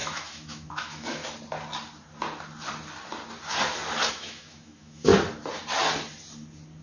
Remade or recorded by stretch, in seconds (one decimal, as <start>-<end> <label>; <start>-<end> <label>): 0.0-1.2 remade; 1.2-4.1 recorded; 4.1-5.1 remade; 5.1-6.8 recorded